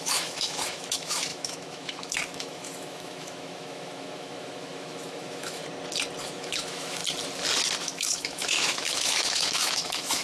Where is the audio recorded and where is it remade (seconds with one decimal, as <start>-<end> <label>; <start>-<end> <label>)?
0.0-5.6 remade; 5.6-6.2 recorded; 6.2-7.0 remade; 7.0-7.8 recorded; 7.8-10.2 remade